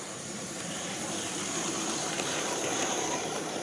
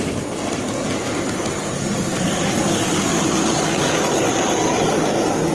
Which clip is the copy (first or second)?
first